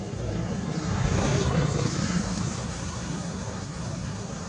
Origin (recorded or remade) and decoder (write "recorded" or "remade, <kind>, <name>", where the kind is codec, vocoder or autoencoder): remade, codec, SNAC